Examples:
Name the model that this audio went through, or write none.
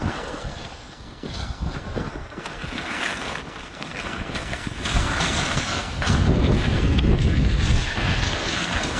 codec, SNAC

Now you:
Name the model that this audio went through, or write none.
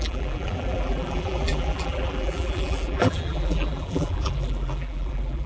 vocoder, BigVGAN v2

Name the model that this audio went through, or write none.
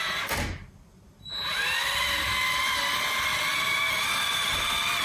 none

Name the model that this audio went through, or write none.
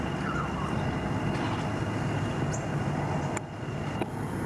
none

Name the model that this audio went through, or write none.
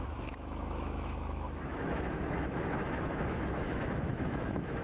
autoencoder, DAC-VAE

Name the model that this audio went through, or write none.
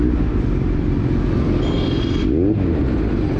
none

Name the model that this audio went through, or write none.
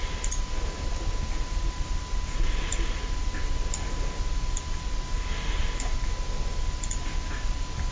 none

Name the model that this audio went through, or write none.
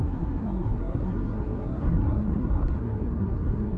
codec, SNAC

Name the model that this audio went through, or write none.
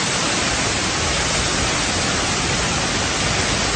none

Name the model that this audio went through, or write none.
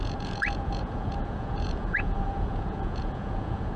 vocoder, Vocos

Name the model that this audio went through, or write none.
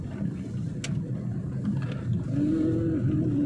none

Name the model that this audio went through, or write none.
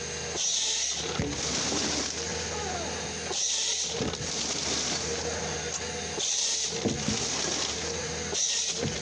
none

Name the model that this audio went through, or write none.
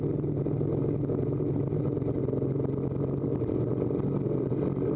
none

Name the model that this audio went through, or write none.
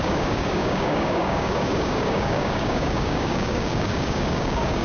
codec, DAC